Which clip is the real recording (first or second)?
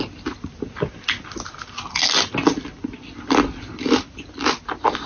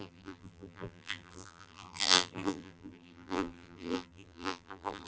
first